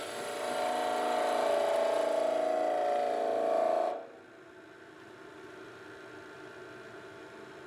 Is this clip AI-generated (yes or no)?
no